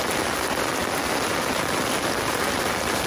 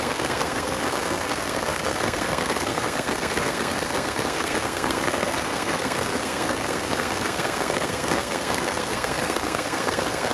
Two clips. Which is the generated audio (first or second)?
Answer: second